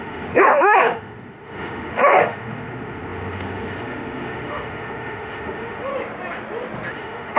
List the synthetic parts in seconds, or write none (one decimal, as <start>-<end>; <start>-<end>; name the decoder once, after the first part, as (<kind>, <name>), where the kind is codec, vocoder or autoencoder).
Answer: 0.0-5.9 (autoencoder, DAC-VAE); 6.9-7.4